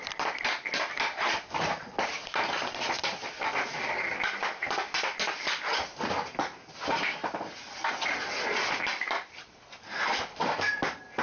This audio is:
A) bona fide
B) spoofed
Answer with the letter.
A